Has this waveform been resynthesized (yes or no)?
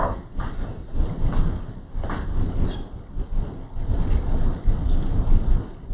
no